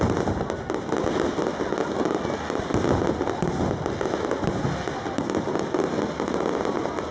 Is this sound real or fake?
real